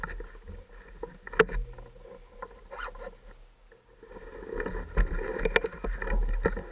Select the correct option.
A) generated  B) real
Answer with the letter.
B